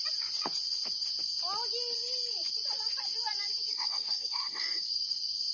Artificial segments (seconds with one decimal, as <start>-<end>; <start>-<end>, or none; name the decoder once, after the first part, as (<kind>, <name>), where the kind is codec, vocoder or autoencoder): 3.7-4.9 (codec, SNAC)